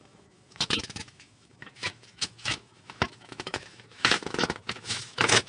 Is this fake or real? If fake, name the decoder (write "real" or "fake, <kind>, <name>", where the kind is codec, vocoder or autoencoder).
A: fake, autoencoder, DAC-VAE